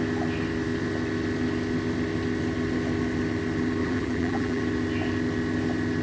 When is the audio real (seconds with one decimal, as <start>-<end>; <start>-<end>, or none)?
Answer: 0.0-3.8; 4.6-6.0